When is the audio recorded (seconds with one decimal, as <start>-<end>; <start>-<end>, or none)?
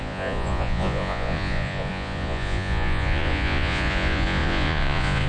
none